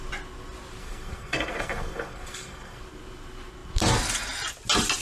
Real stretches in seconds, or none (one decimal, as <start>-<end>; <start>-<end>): 0.0-0.8; 2.8-5.0